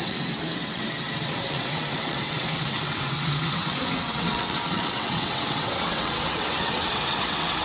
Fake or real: fake